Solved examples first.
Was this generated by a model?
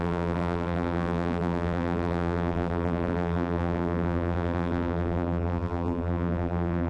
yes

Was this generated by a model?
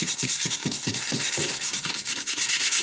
yes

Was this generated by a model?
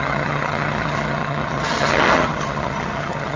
yes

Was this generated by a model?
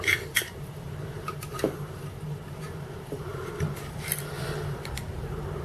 yes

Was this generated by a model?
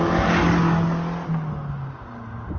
no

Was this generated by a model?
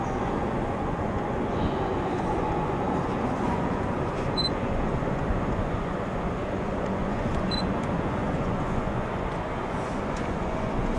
yes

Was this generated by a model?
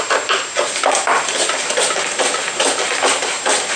no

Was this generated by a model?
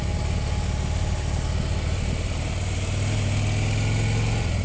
no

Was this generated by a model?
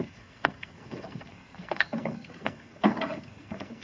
yes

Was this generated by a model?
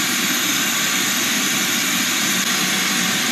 yes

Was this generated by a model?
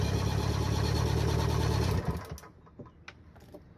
no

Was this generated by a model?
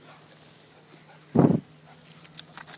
no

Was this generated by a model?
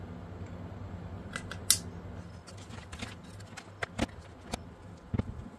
no